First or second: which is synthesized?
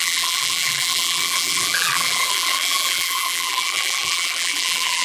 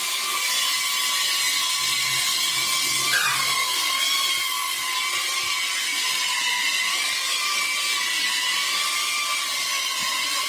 first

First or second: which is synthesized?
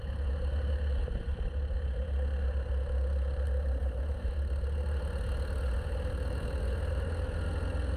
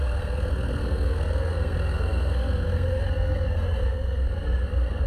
second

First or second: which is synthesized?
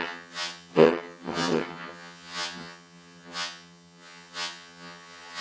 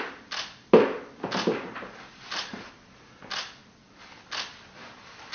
first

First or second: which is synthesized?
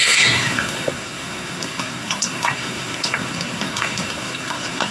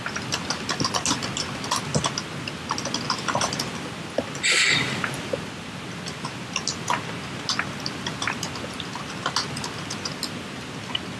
first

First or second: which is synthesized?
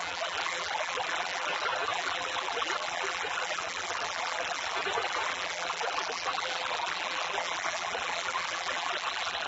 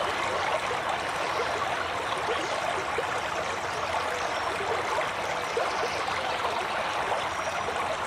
first